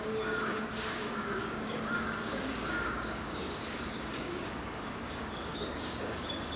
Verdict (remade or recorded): remade